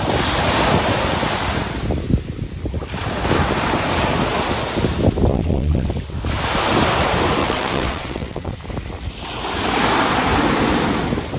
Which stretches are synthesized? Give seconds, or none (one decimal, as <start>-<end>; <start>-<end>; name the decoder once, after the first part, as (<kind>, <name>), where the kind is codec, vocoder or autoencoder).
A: 5.3-5.9 (vocoder, WaveNeXt); 7.4-8.6